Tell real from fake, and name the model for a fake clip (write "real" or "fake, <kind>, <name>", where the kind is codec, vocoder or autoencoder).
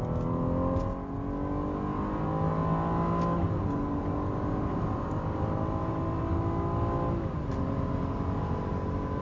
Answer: real